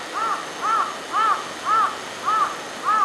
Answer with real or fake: real